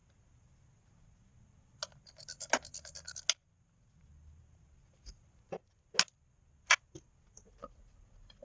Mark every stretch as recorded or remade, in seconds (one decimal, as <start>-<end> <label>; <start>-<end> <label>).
0.0-8.4 recorded